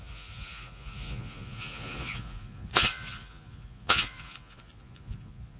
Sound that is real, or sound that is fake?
fake